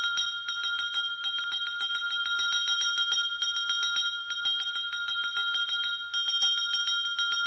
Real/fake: real